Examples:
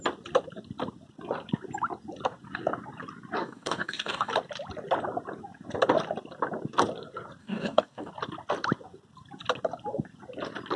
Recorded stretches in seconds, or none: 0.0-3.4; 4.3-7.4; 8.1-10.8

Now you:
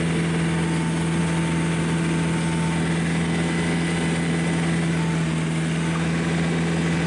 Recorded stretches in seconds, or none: 0.0-7.1